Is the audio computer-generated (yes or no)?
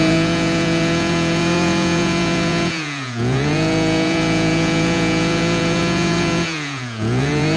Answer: yes